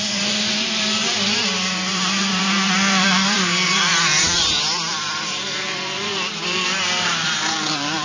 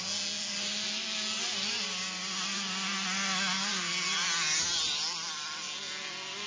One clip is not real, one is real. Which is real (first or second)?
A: second